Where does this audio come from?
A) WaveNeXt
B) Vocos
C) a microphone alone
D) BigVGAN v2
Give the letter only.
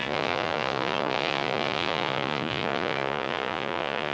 B